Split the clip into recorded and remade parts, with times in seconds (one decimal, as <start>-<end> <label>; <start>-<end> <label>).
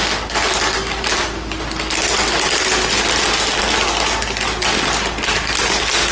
0.0-6.1 recorded